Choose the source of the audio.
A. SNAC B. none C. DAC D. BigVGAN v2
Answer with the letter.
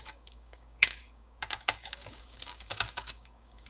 C